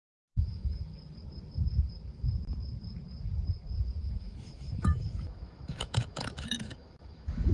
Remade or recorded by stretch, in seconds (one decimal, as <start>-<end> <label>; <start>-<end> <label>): 0.0-0.9 remade; 0.9-4.0 recorded; 4.0-7.5 remade